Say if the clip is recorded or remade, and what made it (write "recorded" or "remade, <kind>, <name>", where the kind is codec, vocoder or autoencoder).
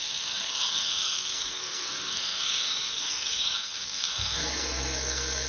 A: remade, codec, SNAC